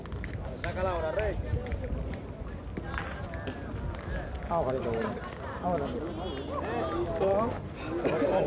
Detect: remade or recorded recorded